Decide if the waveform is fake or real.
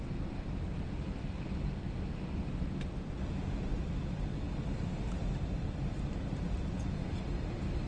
real